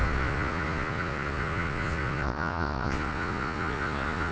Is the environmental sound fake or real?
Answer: fake